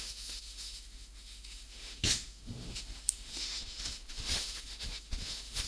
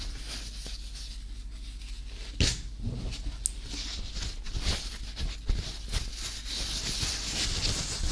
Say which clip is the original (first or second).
second